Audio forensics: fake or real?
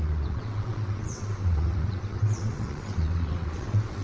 fake